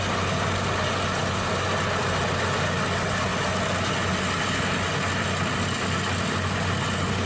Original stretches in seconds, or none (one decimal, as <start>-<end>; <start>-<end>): 0.0-7.3